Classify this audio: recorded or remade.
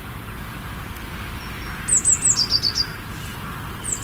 recorded